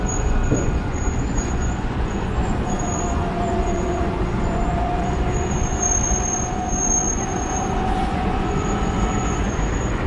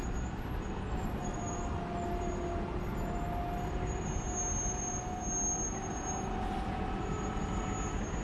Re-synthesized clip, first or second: first